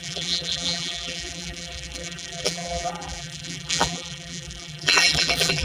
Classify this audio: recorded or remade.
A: remade